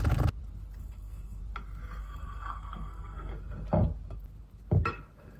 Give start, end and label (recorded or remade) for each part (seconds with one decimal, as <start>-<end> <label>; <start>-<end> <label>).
0.0-0.8 recorded; 0.8-1.4 remade; 1.4-2.0 recorded; 2.0-3.3 remade; 3.3-5.4 recorded